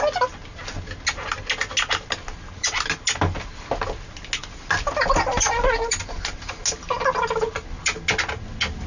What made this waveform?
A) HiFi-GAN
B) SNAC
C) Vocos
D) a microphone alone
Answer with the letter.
D